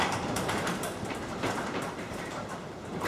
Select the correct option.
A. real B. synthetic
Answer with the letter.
B